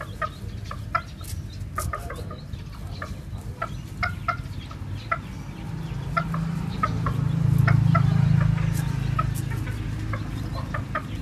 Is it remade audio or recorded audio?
recorded